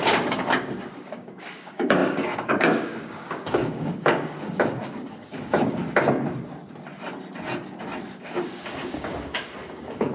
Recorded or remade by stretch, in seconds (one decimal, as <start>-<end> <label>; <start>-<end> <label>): 0.0-5.8 remade; 5.8-8.1 recorded; 8.1-10.1 remade